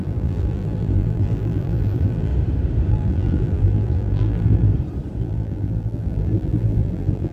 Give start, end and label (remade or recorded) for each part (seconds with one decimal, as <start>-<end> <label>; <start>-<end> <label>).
0.0-2.3 remade; 2.3-2.9 recorded; 2.9-4.7 remade; 4.7-5.2 recorded; 5.2-7.3 remade